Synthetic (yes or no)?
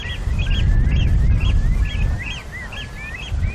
no